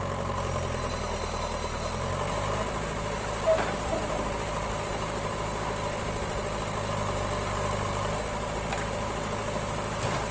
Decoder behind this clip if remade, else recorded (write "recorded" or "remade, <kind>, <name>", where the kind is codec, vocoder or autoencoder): recorded